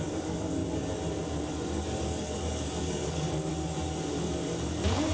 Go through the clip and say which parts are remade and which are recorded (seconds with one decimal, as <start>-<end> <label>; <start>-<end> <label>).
0.0-0.6 remade; 0.6-1.5 recorded; 1.5-3.5 remade; 3.5-4.1 recorded; 4.1-5.1 remade